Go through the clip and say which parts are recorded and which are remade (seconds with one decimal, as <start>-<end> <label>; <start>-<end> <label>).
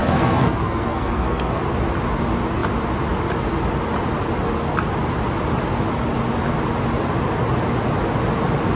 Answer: 0.0-1.6 remade; 1.6-8.8 recorded